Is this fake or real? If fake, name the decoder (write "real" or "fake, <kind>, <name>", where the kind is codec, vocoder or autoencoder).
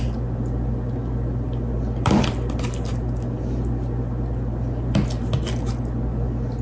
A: real